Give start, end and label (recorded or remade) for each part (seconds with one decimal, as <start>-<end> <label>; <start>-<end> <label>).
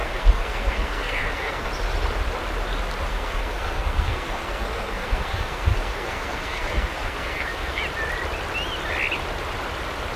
0.0-1.7 remade; 1.7-3.1 recorded; 3.1-7.8 remade; 7.8-10.2 recorded